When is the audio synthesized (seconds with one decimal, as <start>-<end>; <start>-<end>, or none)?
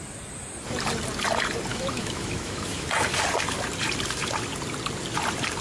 1.7-2.9